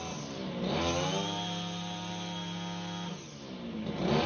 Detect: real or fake real